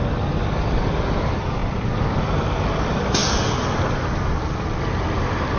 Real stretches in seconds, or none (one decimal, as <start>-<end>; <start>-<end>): 0.0-3.2; 3.9-5.6